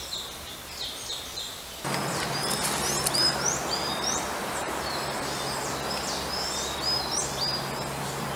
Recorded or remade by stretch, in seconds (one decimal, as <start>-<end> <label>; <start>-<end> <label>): 0.0-4.1 recorded; 4.1-5.0 remade; 5.0-8.4 recorded